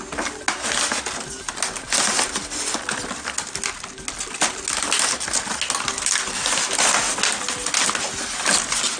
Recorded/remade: recorded